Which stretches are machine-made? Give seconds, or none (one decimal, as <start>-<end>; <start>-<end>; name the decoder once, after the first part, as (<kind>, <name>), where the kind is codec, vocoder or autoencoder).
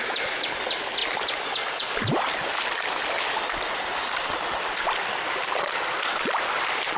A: 0.0-1.0 (vocoder, BigVGAN v2); 1.7-2.5; 4.3-6.1